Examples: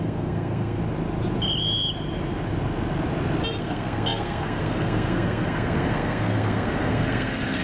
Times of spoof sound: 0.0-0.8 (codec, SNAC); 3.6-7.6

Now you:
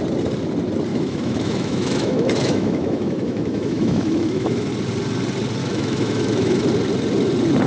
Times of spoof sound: 0.9-4.7 (autoencoder, DAC-VAE); 5.6-6.7

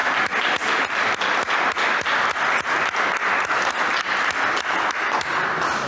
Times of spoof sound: none